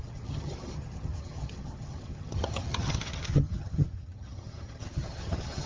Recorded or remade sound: remade